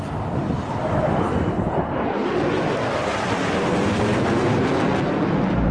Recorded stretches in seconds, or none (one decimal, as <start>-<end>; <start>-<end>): 2.2-5.7

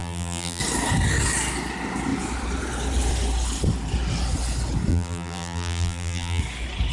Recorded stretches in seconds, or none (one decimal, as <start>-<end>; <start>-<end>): 0.6-4.9; 6.4-6.9